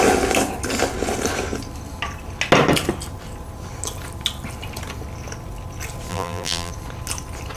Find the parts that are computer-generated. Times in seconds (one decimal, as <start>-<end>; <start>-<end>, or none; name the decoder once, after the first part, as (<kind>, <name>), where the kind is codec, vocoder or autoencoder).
6.1-6.7 (vocoder, BigVGAN v2)